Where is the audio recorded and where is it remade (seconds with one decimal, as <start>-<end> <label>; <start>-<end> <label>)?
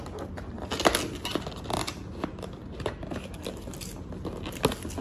0.0-5.0 recorded